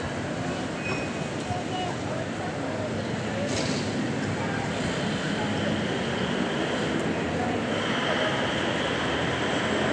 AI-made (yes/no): no